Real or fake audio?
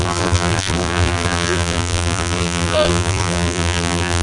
fake